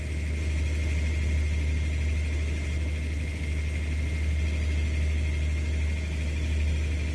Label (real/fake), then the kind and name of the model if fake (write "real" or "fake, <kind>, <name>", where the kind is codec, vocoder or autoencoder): real